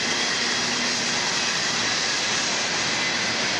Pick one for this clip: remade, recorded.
recorded